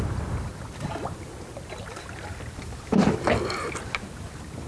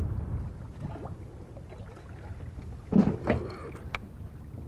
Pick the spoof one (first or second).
first